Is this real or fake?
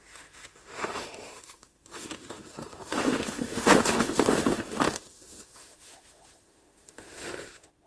fake